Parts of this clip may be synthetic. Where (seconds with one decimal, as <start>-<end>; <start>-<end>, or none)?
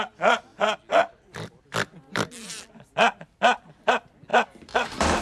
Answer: none